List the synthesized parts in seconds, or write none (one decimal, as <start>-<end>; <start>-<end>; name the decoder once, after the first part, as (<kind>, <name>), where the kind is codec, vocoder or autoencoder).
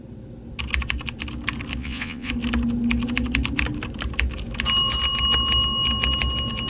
1.8-2.3 (vocoder, Vocos)